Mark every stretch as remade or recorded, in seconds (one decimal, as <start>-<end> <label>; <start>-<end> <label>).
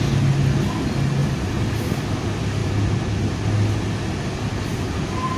0.0-1.2 recorded; 1.2-1.7 remade; 1.7-5.4 recorded